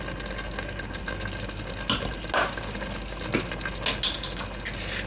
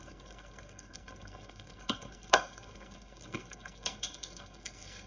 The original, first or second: first